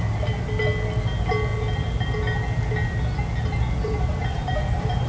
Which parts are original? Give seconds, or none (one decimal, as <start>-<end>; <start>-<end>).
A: 0.0-3.8